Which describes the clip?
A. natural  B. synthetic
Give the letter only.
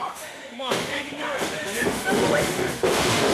B